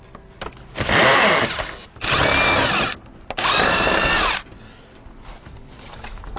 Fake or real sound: real